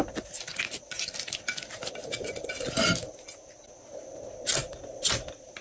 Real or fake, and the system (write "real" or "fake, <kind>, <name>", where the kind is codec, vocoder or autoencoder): real